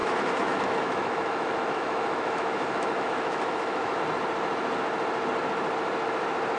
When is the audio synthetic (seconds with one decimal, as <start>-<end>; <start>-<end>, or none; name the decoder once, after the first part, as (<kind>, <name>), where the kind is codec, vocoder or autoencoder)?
0.0-4.0 (autoencoder, DAC-VAE)